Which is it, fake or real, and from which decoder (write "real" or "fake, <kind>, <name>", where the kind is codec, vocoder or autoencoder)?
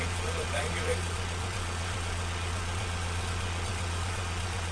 fake, vocoder, Vocos